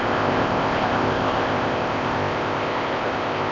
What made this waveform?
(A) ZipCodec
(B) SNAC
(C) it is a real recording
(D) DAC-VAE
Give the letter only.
A